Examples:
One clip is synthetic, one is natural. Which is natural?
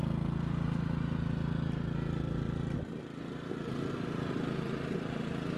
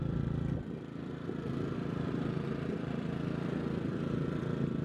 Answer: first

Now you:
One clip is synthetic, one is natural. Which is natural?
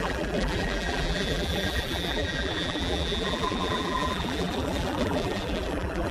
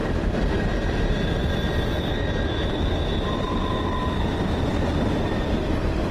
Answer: second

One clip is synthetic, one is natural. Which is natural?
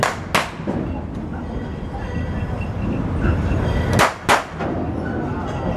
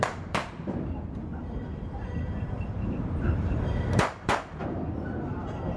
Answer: first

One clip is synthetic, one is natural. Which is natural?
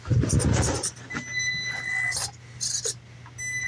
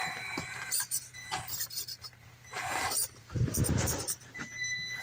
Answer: first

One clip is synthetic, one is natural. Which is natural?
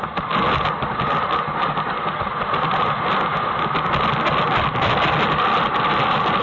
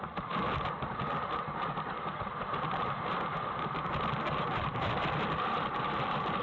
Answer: first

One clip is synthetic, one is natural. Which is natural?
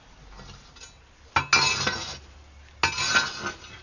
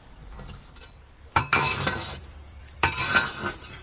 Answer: first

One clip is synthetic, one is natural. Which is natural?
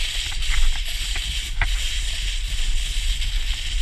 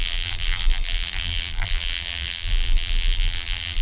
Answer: first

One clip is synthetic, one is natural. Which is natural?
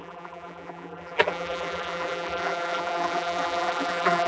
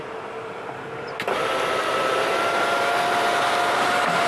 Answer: second